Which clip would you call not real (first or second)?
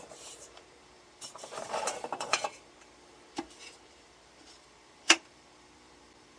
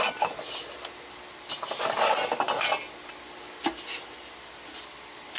first